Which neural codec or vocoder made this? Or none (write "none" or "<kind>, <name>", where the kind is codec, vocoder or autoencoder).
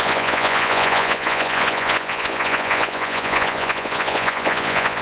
vocoder, Vocos